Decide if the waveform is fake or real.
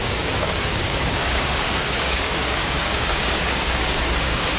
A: fake